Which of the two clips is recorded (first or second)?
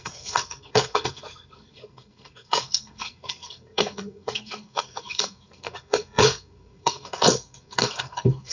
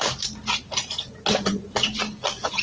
second